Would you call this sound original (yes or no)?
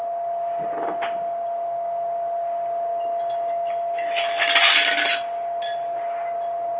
yes